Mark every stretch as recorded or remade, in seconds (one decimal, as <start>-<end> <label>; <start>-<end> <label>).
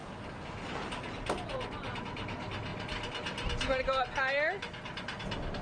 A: 0.0-5.6 recorded